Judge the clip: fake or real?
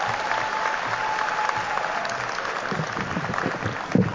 real